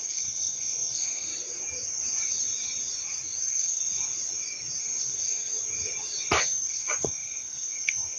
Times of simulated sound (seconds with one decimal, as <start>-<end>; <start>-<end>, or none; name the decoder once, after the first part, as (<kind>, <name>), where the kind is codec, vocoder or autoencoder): 0.0-1.3 (codec, SNAC); 3.4-3.8; 4.8-5.5; 6.4-8.2